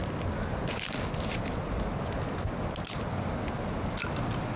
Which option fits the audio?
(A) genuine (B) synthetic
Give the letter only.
A